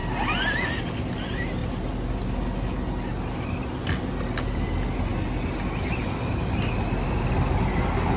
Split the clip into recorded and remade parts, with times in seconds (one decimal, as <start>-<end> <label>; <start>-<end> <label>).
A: 0.0-8.2 recorded